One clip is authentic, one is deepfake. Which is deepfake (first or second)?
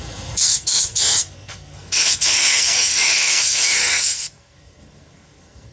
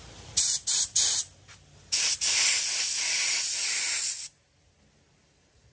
first